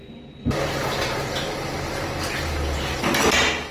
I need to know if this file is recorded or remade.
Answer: recorded